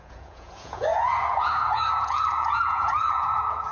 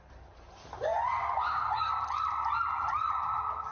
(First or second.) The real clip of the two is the second